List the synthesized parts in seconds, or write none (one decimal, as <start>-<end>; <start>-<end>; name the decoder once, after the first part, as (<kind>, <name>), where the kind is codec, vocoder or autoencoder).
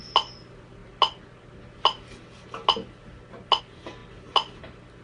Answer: none